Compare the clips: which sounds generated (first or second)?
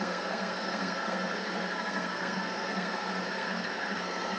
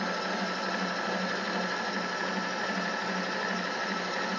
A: first